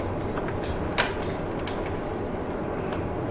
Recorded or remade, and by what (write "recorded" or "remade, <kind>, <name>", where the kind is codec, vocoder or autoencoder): recorded